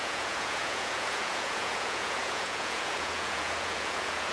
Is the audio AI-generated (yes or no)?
yes